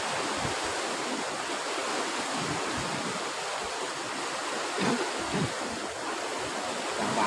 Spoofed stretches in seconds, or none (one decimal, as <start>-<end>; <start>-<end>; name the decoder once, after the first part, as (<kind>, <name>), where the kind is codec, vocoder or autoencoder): none